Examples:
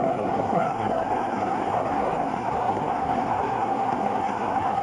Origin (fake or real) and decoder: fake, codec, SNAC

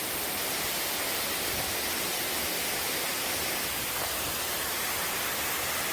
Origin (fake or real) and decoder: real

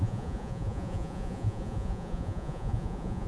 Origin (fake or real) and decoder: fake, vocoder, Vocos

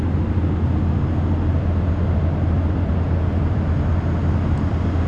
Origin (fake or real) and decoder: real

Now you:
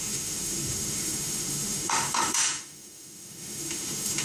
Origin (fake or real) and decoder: fake, autoencoder, DAC-VAE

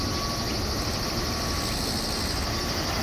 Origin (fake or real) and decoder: real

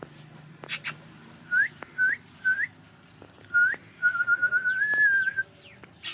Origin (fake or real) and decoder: real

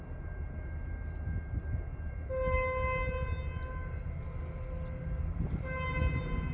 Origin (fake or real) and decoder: real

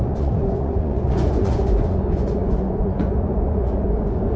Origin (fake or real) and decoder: fake, vocoder, Vocos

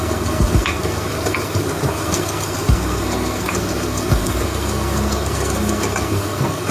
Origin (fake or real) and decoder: fake, codec, SNAC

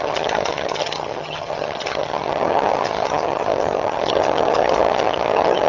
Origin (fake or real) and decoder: fake, vocoder, HiFi-GAN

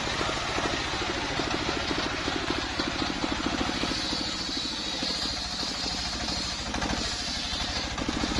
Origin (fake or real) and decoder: real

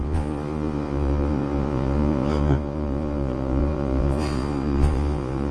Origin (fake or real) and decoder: fake, vocoder, Vocos